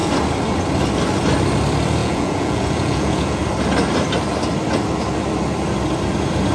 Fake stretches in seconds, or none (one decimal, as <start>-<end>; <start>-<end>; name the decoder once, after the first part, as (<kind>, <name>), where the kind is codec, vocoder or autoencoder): 2.0-3.4 (vocoder, Vocos)